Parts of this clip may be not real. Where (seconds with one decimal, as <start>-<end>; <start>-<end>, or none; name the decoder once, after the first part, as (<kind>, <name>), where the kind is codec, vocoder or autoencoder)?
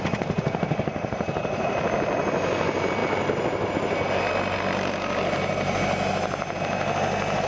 none